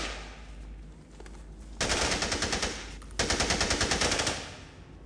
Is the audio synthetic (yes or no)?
no